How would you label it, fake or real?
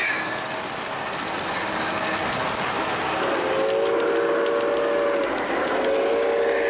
real